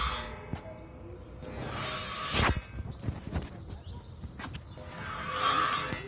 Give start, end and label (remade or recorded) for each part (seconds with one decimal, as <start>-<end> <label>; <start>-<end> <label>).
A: 0.0-6.1 recorded